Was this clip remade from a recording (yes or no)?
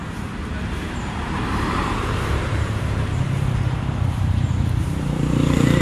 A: yes